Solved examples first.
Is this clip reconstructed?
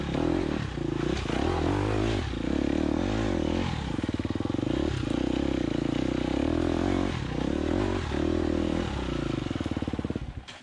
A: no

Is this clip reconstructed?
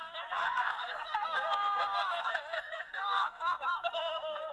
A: yes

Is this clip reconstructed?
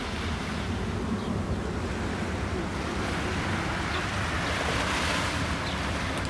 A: no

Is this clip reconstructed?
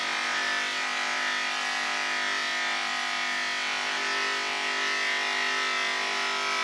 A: no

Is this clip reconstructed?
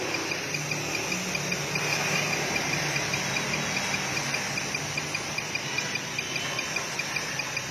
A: no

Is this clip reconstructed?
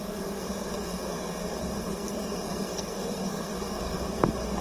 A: yes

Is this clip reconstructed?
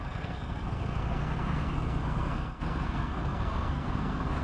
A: yes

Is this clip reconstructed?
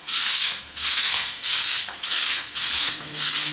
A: yes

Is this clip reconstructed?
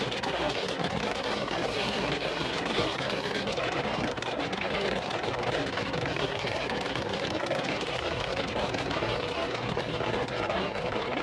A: yes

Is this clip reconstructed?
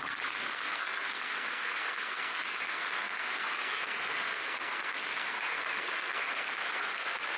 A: yes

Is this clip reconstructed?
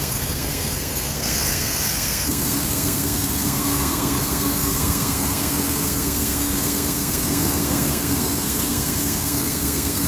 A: yes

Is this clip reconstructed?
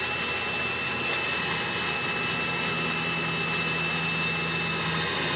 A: no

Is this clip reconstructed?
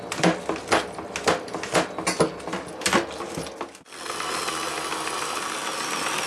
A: no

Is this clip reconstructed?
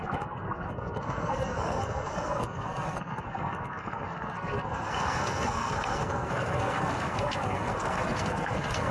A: yes